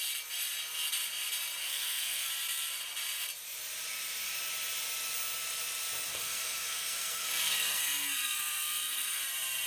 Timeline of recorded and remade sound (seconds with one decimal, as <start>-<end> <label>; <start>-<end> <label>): 0.0-1.6 recorded; 1.6-2.3 remade; 2.3-6.1 recorded; 6.1-9.2 remade; 9.2-9.7 recorded